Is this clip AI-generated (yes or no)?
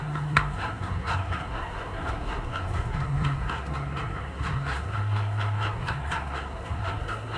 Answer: yes